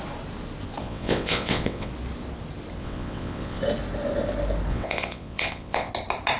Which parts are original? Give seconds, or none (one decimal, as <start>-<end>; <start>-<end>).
0.0-0.8; 1.9-2.8; 3.6-4.7; 5.9-6.4